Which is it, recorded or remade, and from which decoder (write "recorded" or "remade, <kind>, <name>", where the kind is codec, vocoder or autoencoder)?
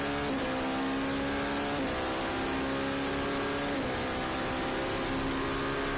recorded